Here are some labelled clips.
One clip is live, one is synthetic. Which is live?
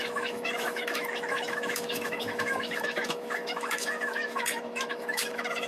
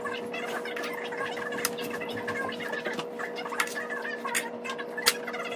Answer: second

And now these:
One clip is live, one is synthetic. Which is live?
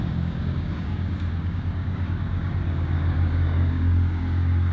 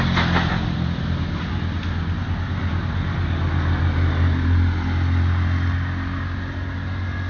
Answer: second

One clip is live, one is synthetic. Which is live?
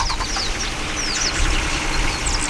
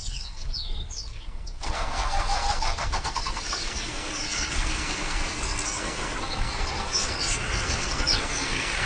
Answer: first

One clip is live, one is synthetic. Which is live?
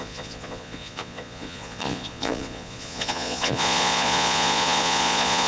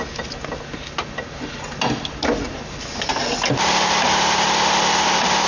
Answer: second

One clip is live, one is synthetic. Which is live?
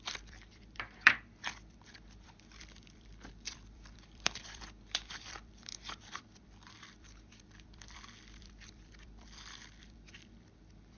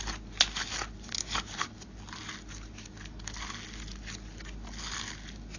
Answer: second